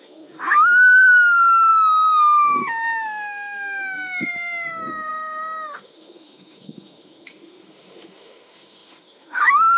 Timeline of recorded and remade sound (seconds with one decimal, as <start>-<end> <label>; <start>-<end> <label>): 0.0-9.8 remade